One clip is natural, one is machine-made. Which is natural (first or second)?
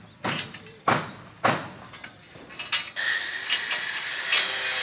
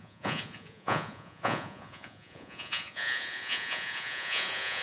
first